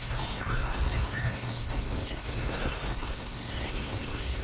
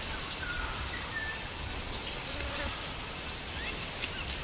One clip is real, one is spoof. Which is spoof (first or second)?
first